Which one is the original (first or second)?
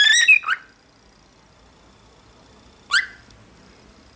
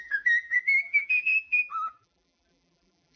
first